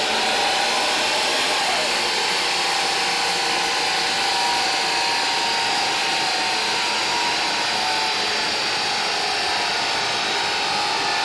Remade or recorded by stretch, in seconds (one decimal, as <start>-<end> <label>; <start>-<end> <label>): 0.0-11.2 recorded